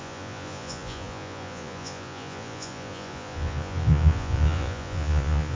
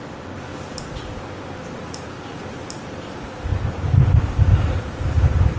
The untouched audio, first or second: second